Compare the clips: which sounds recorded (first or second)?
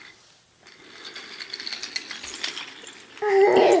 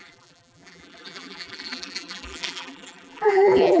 first